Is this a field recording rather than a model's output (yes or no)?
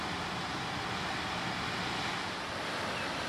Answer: yes